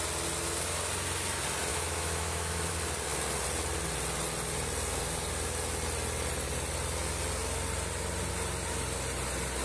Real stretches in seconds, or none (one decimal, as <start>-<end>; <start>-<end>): 0.0-1.7; 2.7-9.6